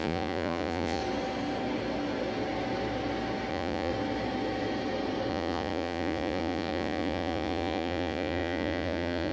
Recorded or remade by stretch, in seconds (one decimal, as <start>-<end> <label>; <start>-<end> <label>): 0.0-1.0 remade; 1.0-3.5 recorded; 3.5-3.9 remade; 3.9-5.3 recorded; 5.3-9.3 remade